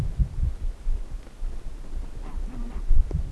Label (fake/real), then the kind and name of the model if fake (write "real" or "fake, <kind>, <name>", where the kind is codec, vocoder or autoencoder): real